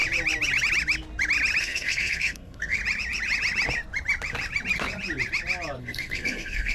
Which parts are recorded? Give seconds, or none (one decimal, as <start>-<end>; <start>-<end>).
0.0-1.6; 2.8-5.8